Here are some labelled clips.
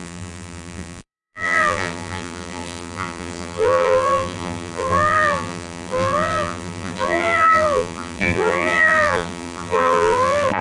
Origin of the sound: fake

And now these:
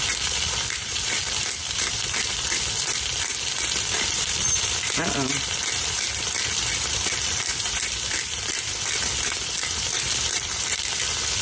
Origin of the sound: fake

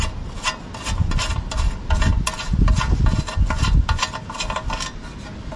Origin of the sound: real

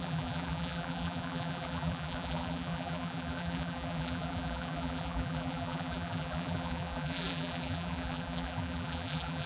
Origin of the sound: fake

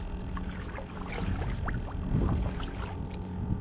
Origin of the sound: real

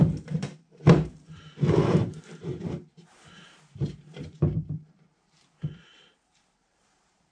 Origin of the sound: fake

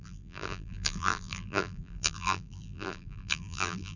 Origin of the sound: fake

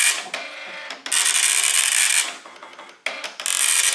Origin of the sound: real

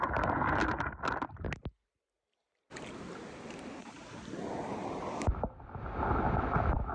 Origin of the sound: real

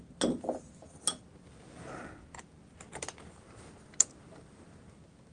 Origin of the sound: real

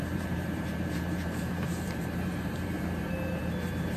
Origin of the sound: fake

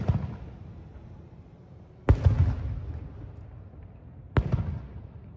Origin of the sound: real